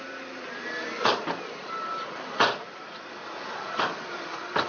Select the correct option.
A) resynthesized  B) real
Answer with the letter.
A